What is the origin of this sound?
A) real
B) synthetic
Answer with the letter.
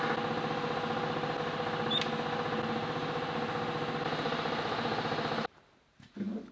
A